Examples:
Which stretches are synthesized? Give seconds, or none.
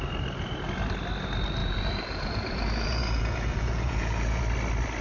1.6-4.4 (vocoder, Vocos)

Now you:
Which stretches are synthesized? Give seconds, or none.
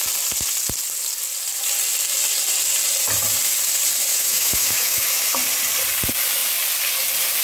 4.1-5.3 (autoencoder, DAC-VAE)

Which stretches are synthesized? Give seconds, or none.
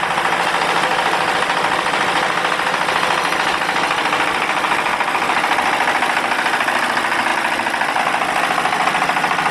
none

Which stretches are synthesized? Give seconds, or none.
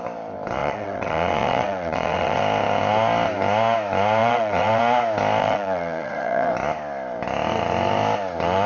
0.6-2.4 (vocoder, WaveNeXt); 4.2-4.8; 5.4-6.5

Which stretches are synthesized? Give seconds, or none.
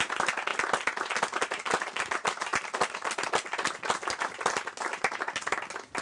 none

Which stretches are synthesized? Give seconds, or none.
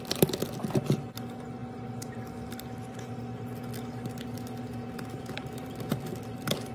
none